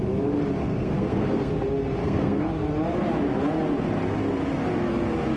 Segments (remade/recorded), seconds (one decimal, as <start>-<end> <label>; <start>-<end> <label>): 0.0-0.6 recorded; 0.6-1.5 remade; 1.5-2.0 recorded; 2.0-2.5 remade; 2.5-5.4 recorded